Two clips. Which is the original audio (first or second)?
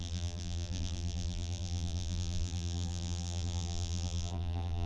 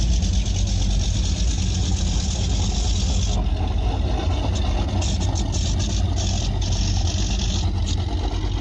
second